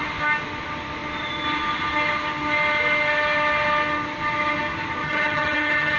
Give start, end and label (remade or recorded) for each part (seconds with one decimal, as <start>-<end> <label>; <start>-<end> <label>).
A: 0.0-5.0 recorded; 5.0-6.0 remade